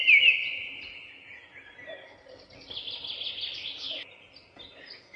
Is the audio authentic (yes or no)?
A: yes